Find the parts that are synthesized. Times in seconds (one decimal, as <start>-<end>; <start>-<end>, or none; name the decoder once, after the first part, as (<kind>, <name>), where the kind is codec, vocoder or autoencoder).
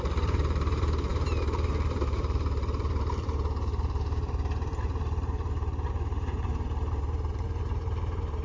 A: 0.0-8.4 (vocoder, BigVGAN v2)